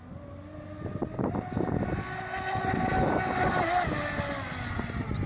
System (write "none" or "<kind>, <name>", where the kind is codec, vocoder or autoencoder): none